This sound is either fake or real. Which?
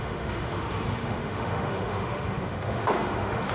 fake